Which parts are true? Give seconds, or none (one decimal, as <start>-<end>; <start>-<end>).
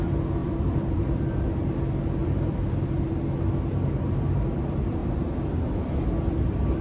0.0-0.4; 1.3-2.2; 3.1-6.8